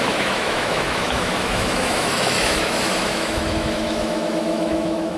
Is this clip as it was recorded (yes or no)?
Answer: no